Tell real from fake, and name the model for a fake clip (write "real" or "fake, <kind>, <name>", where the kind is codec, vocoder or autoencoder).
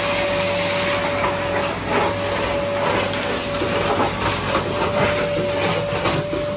real